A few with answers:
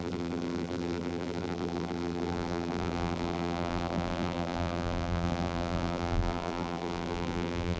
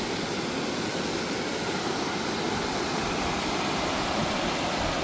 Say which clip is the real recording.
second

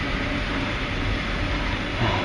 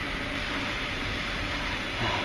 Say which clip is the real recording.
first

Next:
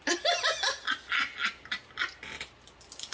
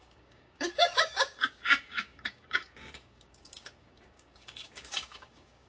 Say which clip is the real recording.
first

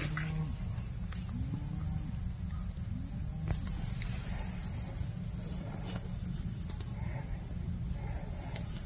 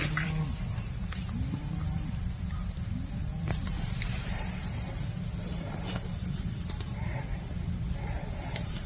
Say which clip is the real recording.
first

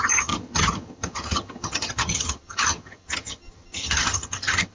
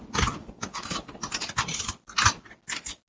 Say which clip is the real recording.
second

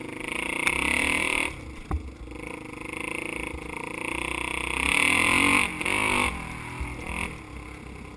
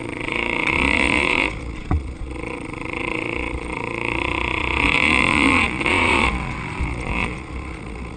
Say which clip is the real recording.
first